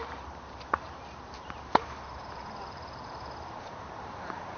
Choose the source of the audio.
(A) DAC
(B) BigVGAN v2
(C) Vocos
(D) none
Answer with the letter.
B